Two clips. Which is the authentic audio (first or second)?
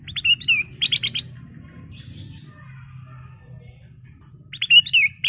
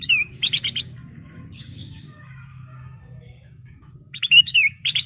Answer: first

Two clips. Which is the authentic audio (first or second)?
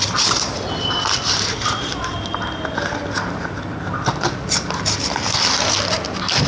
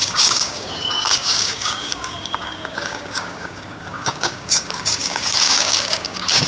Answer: first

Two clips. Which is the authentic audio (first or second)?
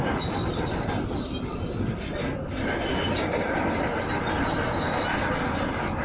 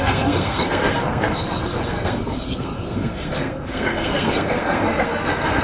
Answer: first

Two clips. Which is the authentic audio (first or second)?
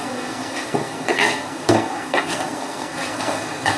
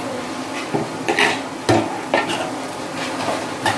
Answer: second